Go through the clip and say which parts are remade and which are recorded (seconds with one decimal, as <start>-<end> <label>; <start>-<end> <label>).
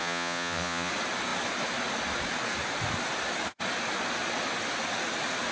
0.0-0.9 remade; 0.9-5.5 recorded